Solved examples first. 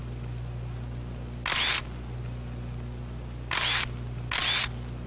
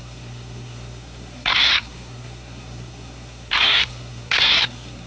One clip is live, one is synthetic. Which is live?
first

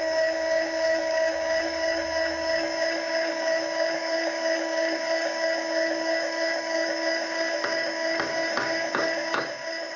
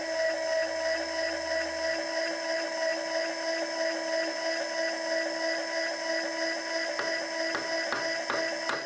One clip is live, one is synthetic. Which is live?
second